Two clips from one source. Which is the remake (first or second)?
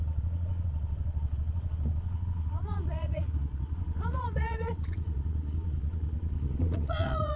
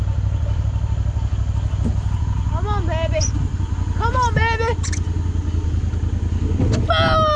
first